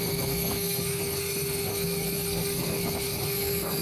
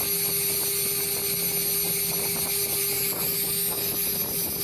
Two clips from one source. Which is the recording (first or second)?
second